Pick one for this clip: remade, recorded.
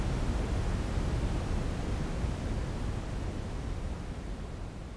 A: recorded